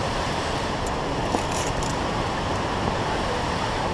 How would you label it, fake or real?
fake